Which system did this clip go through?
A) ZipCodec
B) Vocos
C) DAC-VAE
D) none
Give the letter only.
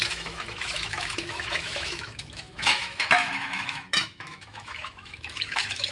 C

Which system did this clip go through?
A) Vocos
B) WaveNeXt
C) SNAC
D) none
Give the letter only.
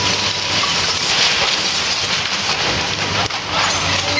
D